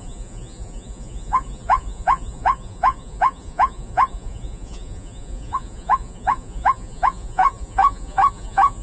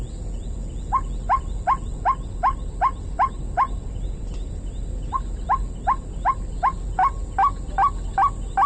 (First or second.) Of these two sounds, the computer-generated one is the first